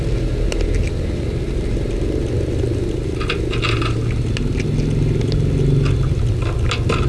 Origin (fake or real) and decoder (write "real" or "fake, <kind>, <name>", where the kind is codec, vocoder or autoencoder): real